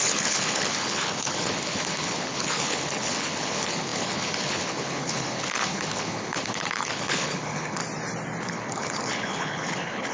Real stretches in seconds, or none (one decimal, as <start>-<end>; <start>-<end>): 7.8-8.4